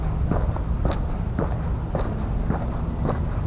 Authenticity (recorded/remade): recorded